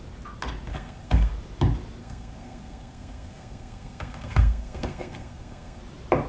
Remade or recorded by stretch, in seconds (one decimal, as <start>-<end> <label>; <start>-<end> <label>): 0.0-0.7 recorded; 0.7-1.3 remade; 1.3-2.0 recorded; 2.0-5.8 remade; 5.8-6.3 recorded